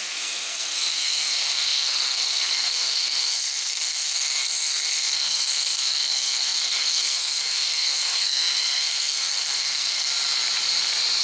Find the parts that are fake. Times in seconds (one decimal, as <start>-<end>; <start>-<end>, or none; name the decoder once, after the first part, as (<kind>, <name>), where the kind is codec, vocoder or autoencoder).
0.0-10.1 (codec, SNAC)